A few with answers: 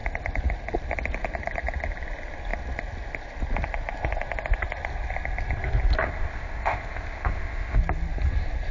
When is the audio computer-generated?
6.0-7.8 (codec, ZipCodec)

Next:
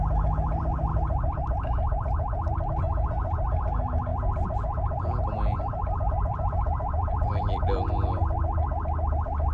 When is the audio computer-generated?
4.1-6.1 (vocoder, BigVGAN v2); 7.0-8.2

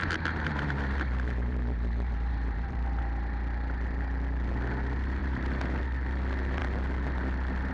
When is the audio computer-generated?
0.0-3.0 (vocoder, BigVGAN v2); 5.2-5.8

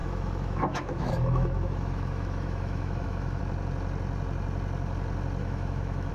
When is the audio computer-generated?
0.0-3.4 (autoencoder, DAC-VAE); 5.4-6.1

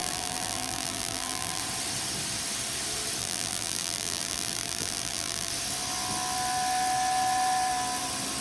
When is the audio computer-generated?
0.0-1.6 (vocoder, BigVGAN v2); 3.2-5.5

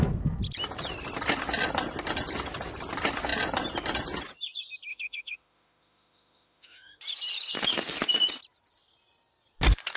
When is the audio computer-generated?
4.9-7.0 (autoencoder, DAC-VAE)